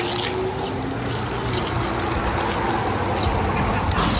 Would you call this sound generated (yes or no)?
no